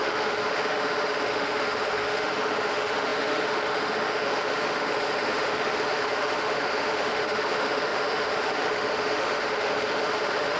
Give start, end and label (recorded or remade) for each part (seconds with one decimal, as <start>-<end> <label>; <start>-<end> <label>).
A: 0.0-10.6 remade